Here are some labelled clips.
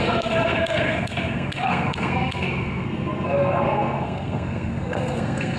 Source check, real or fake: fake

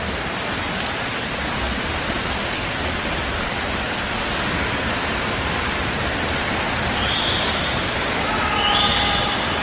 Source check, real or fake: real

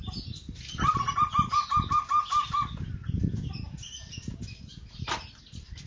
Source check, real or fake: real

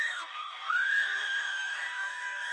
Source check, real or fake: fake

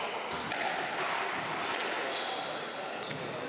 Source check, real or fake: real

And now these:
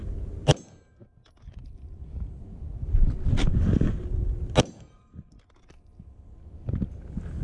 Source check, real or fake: real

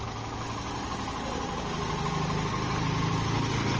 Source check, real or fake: real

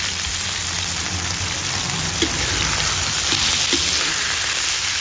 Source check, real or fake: real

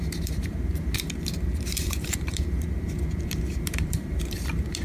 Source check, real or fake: fake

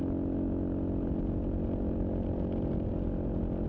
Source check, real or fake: real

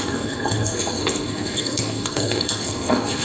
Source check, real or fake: fake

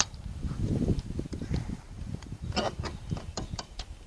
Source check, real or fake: fake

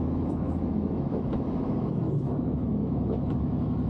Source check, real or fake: fake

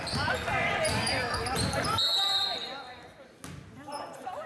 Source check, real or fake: real